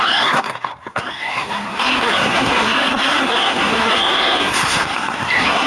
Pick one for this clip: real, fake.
fake